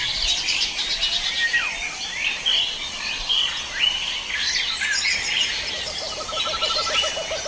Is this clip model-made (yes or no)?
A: no